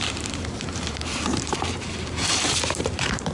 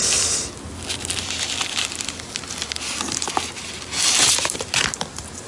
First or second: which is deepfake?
first